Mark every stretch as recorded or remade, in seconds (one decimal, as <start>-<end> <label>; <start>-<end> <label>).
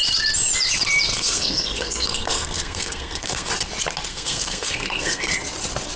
0.0-1.1 recorded; 1.1-3.5 remade; 3.5-4.1 recorded; 4.1-5.3 remade; 5.3-6.0 recorded